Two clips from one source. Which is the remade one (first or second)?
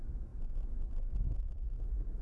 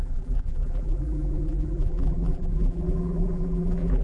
second